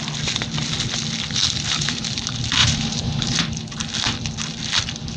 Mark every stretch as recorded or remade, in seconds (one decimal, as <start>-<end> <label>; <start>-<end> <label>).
0.0-1.4 recorded; 1.4-2.2 remade; 2.2-2.6 recorded; 2.6-3.4 remade; 3.4-5.2 recorded